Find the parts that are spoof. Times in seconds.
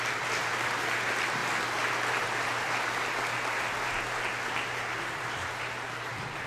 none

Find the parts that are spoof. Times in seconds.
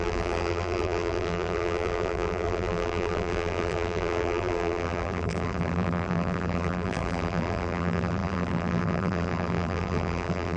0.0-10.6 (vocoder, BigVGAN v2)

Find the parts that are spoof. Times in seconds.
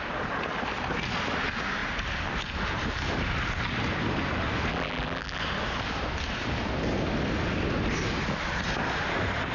4.7-5.4 (vocoder, BigVGAN v2)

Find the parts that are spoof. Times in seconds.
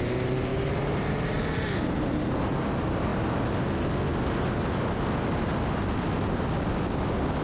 0.0-3.1 (vocoder, BigVGAN v2)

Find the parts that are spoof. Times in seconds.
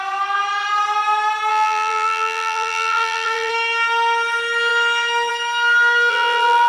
1.5-3.5 (vocoder, BigVGAN v2); 6.1-6.7